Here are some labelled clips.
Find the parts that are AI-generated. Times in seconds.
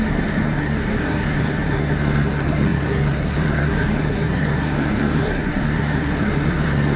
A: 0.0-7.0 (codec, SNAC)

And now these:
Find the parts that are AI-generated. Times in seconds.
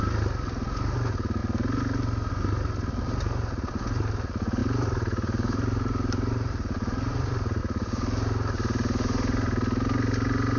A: 4.6-7.6 (vocoder, BigVGAN v2)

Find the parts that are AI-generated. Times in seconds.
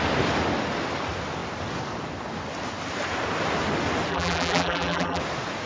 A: 4.1-5.2 (vocoder, BigVGAN v2)